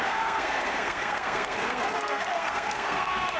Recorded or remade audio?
remade